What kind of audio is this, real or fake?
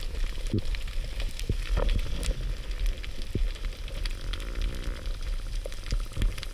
real